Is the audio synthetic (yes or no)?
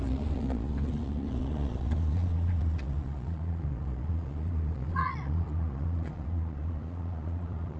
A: yes